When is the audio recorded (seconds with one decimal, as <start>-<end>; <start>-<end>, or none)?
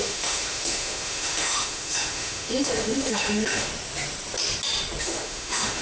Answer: 3.7-5.0